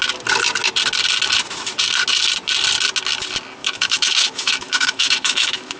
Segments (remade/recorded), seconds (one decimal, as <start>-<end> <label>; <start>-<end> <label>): 0.0-3.6 recorded; 3.6-5.8 remade